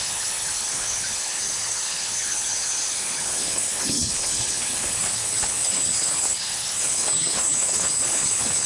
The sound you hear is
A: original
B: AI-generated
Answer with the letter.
B